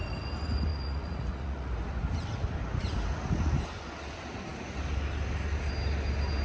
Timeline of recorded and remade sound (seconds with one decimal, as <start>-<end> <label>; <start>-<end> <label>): 0.0-0.7 recorded; 0.7-1.7 remade; 1.7-6.4 recorded